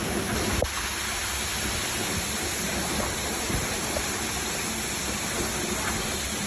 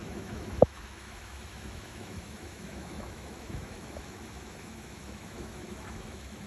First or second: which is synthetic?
second